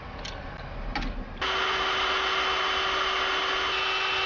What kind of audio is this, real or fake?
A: real